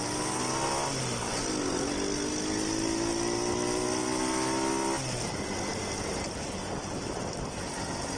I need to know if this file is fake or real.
real